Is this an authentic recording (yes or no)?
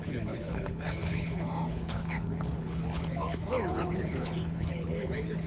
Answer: no